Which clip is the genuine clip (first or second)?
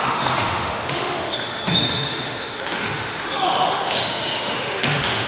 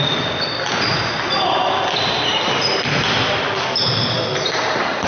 second